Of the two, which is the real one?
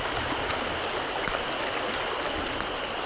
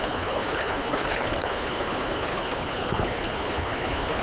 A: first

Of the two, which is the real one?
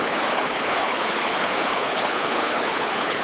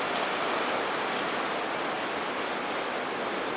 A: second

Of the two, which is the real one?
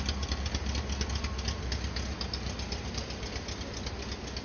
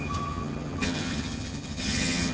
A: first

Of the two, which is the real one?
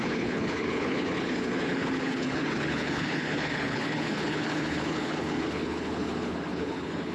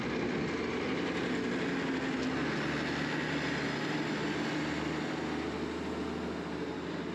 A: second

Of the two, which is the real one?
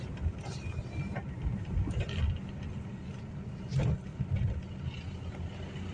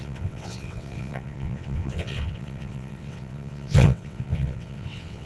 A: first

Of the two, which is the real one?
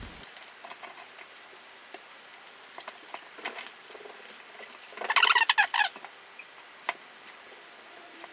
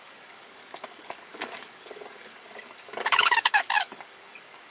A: first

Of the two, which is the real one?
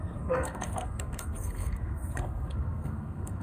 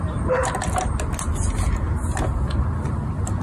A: second